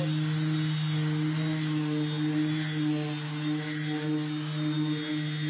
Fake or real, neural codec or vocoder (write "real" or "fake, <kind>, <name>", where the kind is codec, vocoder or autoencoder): real